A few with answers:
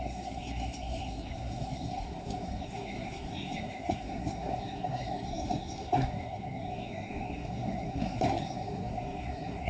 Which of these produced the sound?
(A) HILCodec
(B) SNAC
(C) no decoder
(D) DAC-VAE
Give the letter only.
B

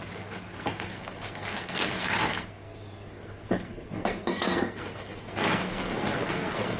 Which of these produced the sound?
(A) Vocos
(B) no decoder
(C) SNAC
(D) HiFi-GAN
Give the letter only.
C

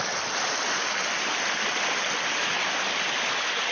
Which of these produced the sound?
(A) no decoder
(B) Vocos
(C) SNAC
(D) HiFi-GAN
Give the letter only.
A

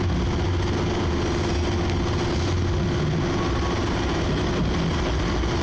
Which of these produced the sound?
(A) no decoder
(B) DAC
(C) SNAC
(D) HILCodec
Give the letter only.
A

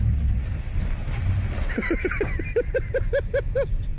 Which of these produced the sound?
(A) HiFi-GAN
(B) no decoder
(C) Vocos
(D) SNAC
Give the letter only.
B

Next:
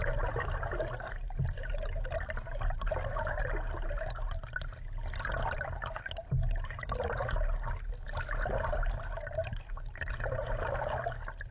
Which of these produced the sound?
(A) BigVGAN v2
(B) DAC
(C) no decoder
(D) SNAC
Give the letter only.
C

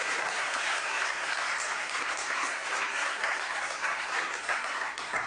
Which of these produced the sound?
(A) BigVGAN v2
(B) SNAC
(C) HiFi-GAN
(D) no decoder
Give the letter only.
B